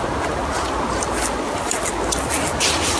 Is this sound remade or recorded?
recorded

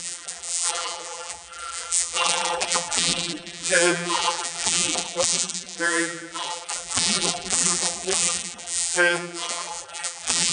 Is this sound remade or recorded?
remade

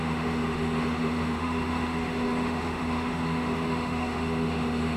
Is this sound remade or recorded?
remade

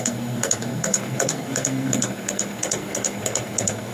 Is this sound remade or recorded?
remade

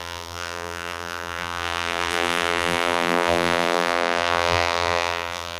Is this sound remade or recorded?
remade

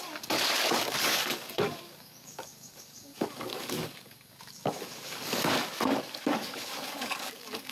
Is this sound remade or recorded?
remade